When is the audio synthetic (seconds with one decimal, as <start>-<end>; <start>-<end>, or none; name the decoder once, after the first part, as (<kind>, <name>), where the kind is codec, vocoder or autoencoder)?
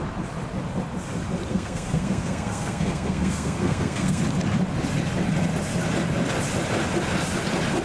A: 1.5-4.2 (codec, SNAC)